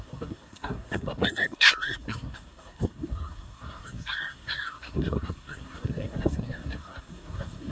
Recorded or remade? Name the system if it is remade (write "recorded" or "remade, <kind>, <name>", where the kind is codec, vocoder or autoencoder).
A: remade, codec, SNAC